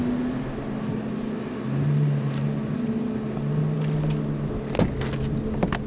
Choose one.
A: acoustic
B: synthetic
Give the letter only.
A